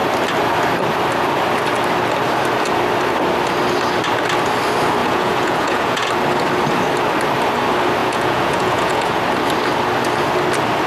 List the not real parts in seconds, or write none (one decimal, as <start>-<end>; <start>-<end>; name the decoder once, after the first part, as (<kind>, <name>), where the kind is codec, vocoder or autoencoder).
5.0-6.1 (vocoder, Vocos); 8.0-9.2